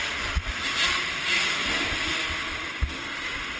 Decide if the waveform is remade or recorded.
recorded